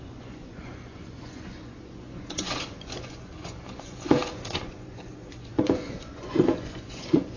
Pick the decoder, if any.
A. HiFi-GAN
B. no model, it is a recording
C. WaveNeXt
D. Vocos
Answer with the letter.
D